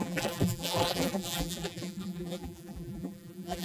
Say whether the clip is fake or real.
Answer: fake